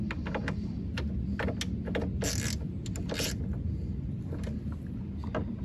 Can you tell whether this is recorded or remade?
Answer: recorded